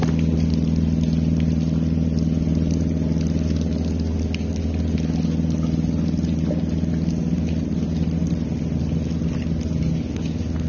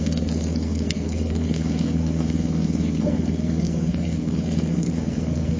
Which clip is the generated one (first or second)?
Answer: second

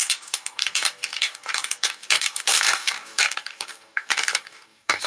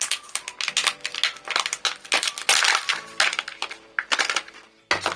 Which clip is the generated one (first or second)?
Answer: first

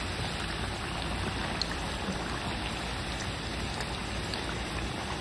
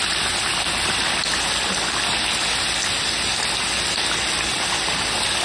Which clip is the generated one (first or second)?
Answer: first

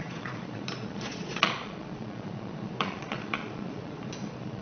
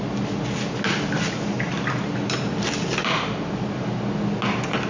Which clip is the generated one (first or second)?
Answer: first